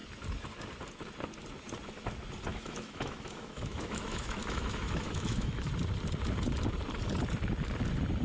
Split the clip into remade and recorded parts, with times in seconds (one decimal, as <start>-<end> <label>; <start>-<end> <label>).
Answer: 0.0-2.5 recorded; 2.5-5.7 remade; 5.7-8.2 recorded